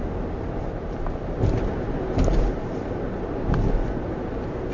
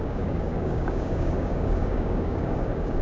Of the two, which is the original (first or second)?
first